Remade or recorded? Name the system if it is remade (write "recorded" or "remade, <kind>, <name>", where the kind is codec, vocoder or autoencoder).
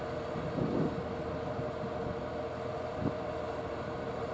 recorded